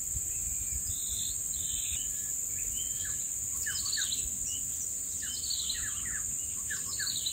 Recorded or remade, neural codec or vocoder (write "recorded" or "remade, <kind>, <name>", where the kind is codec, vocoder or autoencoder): recorded